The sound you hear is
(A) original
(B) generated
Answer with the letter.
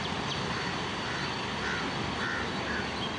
A